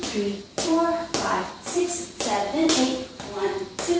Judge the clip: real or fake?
real